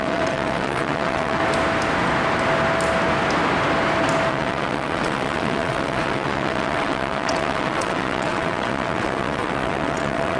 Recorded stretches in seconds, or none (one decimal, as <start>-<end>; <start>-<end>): 1.4-4.3

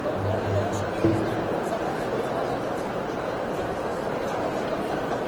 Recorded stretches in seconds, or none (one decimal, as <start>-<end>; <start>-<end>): 0.0-3.9; 4.5-5.3

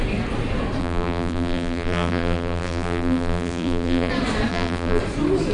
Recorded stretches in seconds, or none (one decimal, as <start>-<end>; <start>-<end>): 0.0-0.8; 4.1-4.5; 5.0-5.5

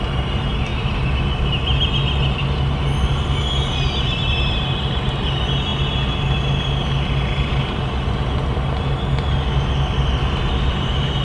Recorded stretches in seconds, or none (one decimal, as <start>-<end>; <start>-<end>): 0.0-11.2

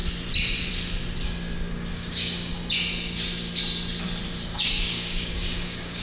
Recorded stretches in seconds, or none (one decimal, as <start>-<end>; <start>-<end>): 0.0-1.9; 2.5-4.5

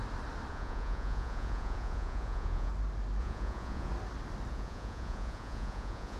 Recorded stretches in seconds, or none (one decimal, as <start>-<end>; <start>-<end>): 0.0-0.5; 2.7-3.2; 3.9-4.5

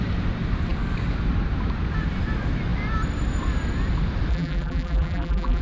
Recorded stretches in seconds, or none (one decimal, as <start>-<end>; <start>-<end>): 0.0-4.3

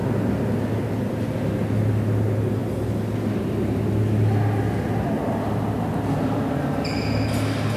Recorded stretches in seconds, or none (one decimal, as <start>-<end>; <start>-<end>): 0.0-7.8